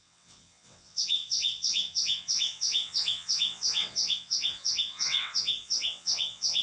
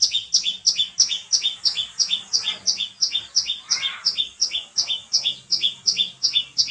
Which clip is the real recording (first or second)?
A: second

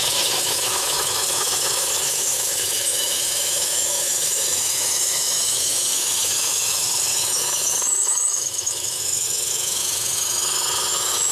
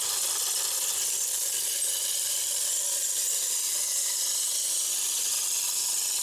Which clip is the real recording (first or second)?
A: second